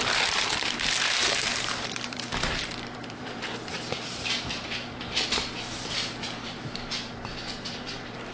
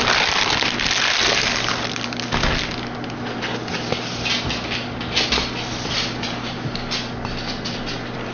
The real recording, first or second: second